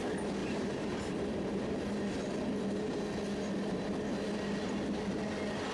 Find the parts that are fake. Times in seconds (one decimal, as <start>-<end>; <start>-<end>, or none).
0.4-1.9